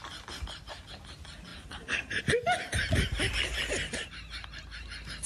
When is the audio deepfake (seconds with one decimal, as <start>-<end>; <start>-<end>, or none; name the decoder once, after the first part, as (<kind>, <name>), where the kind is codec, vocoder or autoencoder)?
1.5-2.2 (vocoder, BigVGAN v2); 3.1-4.6